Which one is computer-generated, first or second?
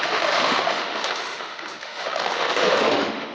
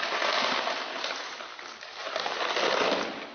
first